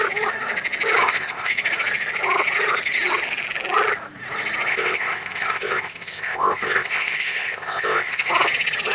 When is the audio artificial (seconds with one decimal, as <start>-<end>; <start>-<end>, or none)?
1.0-1.5; 4.7-8.3